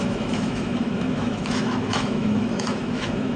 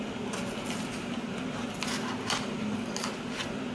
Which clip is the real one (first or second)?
second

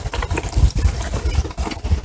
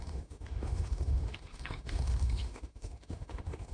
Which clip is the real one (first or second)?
first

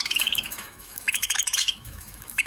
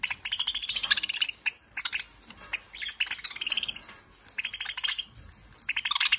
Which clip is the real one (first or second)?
second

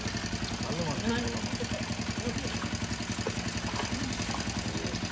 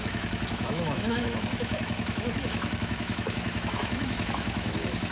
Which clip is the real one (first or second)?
first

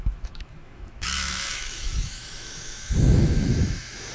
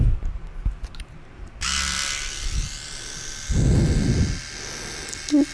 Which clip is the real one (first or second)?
second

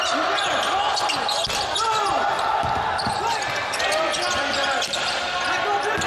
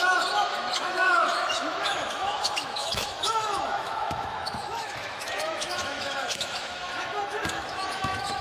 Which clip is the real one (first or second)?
first